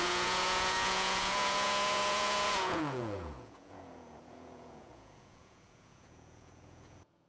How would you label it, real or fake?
fake